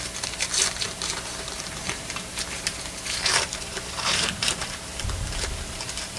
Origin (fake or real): fake